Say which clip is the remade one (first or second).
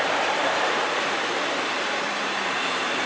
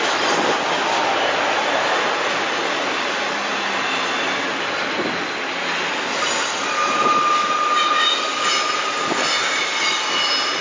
first